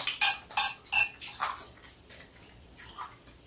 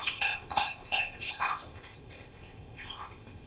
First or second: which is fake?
second